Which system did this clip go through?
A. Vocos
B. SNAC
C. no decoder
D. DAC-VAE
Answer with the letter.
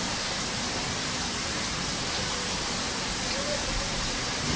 C